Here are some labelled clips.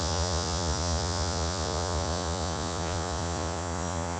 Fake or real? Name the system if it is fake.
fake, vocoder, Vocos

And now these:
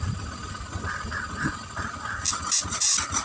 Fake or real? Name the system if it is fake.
real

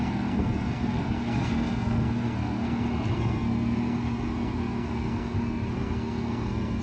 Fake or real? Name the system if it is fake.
fake, codec, SNAC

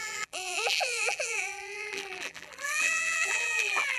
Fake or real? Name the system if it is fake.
fake, vocoder, BigVGAN v2